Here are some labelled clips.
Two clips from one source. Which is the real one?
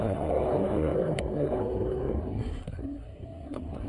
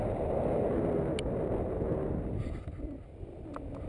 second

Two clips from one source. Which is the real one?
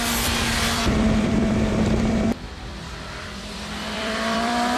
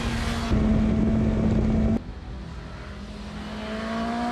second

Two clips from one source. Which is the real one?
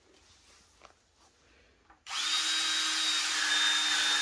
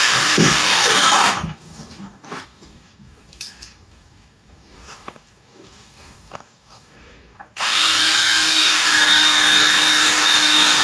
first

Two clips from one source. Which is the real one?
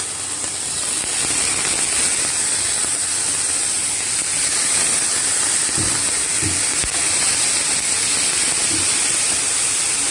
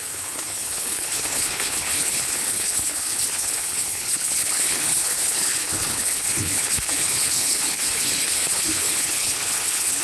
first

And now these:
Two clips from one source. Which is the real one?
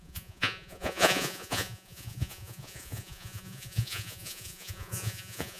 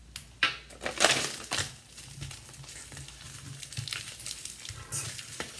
second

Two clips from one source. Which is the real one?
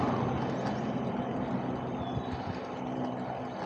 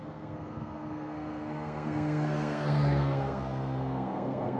first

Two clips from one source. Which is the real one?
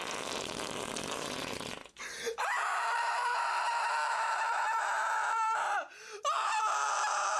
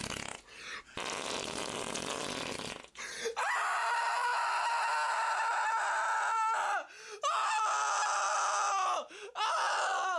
second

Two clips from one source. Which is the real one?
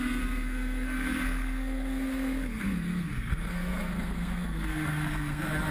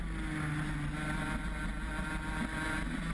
second